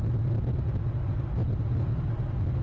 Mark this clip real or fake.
real